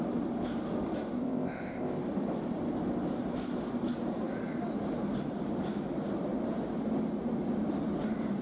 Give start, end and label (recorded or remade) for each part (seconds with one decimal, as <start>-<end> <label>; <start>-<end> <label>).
0.0-1.2 recorded; 1.2-2.0 remade; 2.0-8.4 recorded